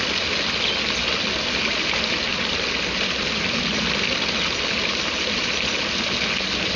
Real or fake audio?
real